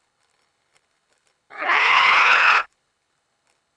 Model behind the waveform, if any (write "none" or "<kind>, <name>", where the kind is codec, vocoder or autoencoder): codec, HILCodec